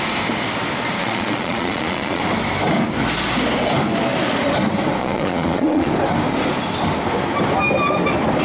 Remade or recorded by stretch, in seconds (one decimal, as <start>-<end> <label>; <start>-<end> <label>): 0.0-1.0 recorded; 1.0-2.2 remade; 2.2-5.0 recorded; 5.0-5.9 remade; 5.9-8.4 recorded